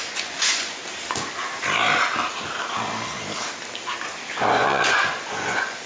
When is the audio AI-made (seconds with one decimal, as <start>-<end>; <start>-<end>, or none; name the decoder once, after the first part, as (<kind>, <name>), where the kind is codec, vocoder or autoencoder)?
0.0-0.8 (vocoder, Vocos); 4.3-5.9

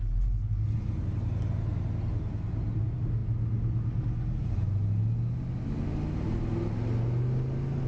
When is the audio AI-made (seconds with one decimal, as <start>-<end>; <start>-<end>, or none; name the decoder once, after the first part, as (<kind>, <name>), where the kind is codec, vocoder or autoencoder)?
none